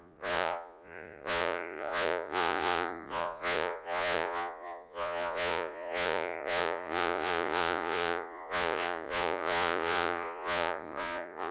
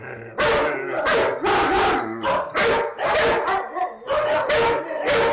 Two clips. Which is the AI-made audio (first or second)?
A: first